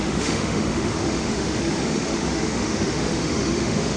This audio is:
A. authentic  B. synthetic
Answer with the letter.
B